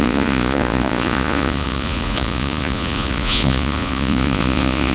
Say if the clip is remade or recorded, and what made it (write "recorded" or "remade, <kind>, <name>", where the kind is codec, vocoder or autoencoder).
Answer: remade, vocoder, Vocos